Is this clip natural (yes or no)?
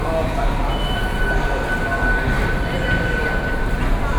yes